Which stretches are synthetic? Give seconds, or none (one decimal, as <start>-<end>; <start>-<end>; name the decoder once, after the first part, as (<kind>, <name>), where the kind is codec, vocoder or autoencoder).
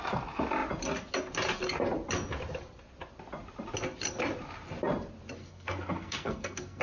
5.4-6.8 (codec, SNAC)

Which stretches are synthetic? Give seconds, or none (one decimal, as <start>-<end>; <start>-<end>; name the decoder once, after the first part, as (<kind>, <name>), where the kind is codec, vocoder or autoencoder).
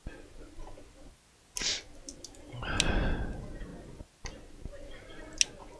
none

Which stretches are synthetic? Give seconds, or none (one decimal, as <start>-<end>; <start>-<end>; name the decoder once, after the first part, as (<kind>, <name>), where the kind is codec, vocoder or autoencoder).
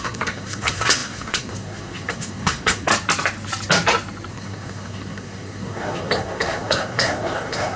0.0-2.9 (codec, SNAC); 4.3-7.8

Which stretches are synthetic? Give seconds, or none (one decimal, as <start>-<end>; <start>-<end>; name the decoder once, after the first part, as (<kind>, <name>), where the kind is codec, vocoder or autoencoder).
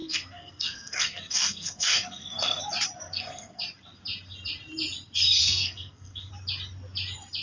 0.0-2.6 (codec, SNAC); 3.1-3.6; 5.4-6.3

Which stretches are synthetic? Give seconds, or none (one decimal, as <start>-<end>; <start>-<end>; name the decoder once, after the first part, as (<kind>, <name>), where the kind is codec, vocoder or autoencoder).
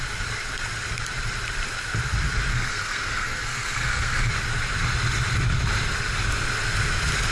2.5-4.3 (codec, SNAC)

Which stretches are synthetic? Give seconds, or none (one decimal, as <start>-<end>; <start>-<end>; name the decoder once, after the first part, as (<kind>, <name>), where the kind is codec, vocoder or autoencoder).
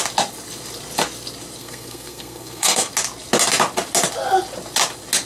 1.6-2.9 (codec, SNAC)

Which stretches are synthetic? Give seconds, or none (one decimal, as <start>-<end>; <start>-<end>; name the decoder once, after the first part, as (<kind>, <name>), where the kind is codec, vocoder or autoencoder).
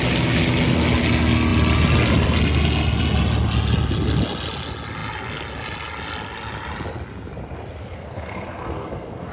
7.8-9.3 (codec, SNAC)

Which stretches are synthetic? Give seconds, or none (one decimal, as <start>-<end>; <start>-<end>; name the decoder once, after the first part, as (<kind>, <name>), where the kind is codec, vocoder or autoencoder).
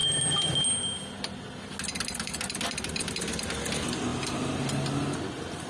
none